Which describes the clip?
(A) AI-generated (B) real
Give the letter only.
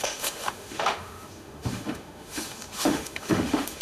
A